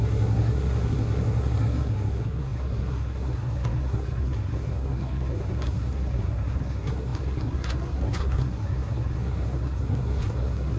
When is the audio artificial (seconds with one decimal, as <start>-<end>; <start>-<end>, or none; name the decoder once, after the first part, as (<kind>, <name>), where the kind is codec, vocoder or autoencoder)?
0.0-10.8 (codec, SNAC)